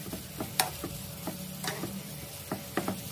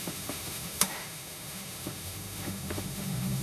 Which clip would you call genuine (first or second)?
first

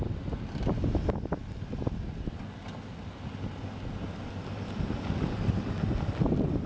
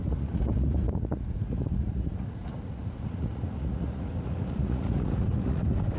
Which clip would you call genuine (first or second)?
first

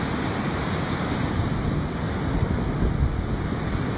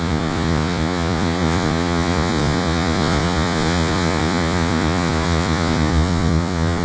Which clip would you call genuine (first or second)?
first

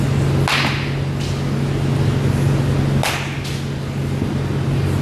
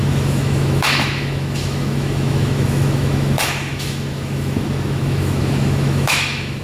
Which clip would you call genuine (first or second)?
first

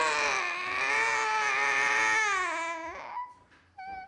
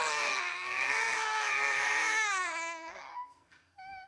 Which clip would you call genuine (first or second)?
first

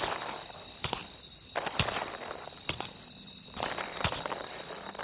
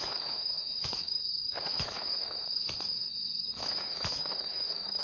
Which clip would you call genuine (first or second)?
first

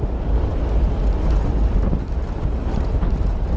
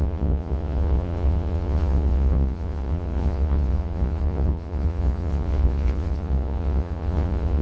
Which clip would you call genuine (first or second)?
first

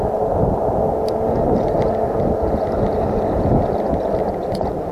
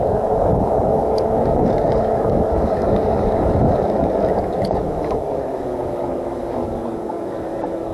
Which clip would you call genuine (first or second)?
first